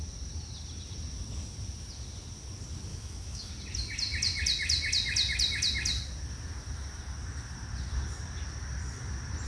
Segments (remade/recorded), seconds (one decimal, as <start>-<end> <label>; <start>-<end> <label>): 0.0-2.9 recorded; 2.9-3.5 remade; 3.5-9.5 recorded

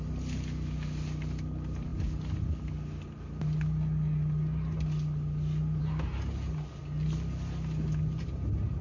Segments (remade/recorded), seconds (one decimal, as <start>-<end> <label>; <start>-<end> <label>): 0.0-8.8 recorded